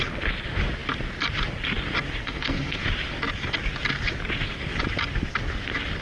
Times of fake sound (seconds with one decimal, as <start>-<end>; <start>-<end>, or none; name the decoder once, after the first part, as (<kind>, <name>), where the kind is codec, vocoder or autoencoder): 2.2-2.8 (codec, SNAC)